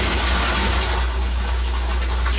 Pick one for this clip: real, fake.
real